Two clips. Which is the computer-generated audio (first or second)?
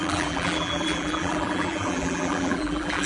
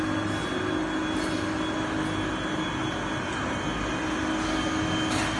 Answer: first